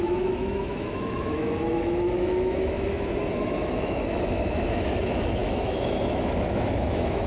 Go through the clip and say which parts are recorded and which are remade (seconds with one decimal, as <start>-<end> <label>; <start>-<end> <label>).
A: 0.0-7.3 remade

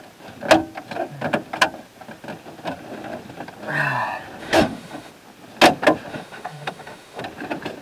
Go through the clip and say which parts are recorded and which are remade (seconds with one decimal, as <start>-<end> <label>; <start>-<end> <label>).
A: 0.0-4.4 recorded; 4.4-5.1 remade; 5.1-6.1 recorded; 6.1-7.2 remade; 7.2-7.8 recorded

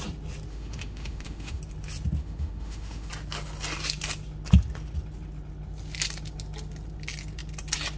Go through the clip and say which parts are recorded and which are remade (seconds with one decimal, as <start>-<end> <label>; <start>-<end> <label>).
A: 0.0-0.5 recorded; 0.5-1.6 remade; 1.6-2.2 recorded; 2.2-3.1 remade; 3.1-8.0 recorded